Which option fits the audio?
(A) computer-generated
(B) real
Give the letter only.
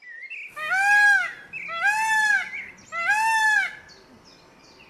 B